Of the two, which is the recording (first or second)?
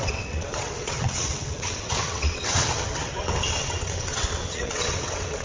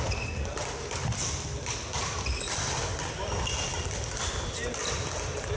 second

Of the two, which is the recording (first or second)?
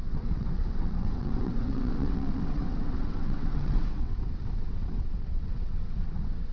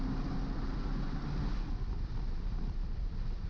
second